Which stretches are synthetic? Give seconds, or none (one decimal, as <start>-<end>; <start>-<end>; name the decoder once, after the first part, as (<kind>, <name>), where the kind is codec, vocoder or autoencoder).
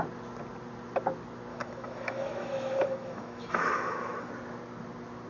1.5-4.3 (autoencoder, DAC-VAE)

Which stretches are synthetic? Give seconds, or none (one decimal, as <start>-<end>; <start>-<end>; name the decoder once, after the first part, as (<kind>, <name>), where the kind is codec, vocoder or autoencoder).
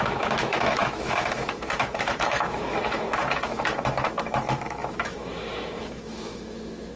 0.0-7.0 (autoencoder, DAC-VAE)